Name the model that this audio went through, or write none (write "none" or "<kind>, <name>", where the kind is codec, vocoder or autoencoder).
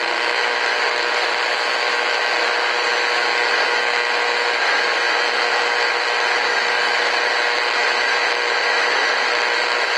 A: autoencoder, DAC-VAE